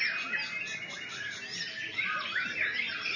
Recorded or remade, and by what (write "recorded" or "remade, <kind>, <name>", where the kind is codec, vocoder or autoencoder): recorded